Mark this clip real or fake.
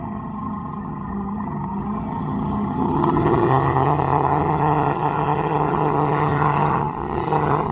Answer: fake